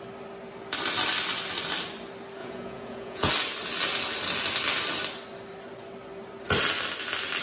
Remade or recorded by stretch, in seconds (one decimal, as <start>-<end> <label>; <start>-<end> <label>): 0.0-2.4 recorded; 2.4-3.3 remade; 3.3-7.4 recorded